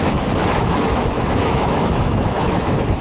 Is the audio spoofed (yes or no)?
yes